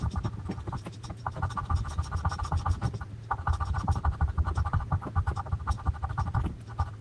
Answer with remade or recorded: remade